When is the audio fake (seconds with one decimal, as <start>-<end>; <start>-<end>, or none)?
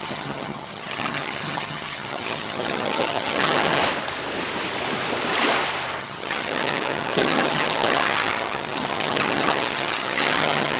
0.0-3.8; 6.0-10.8